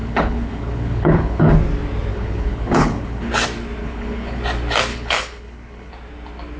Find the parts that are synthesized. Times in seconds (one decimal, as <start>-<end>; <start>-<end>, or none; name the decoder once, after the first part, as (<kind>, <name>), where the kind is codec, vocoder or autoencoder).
0.0-1.5 (codec, HILCodec); 2.1-3.3; 3.8-4.4; 4.9-5.9